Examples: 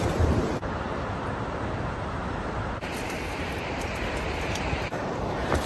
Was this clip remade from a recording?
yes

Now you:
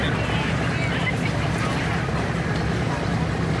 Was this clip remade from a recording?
no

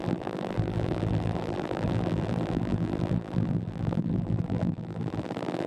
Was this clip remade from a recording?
yes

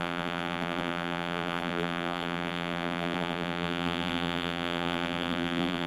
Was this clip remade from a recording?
yes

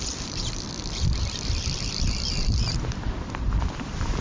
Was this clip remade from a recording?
yes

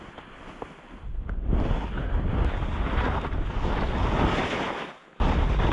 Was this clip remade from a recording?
no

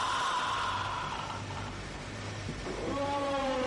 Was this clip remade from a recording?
yes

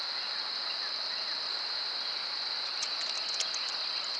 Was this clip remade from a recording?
no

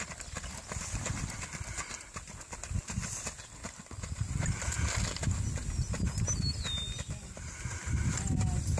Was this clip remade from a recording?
no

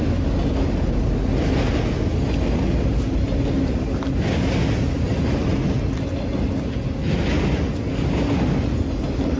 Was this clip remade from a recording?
no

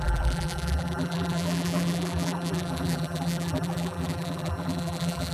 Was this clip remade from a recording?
yes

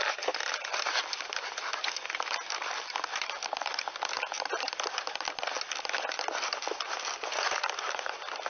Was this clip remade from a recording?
yes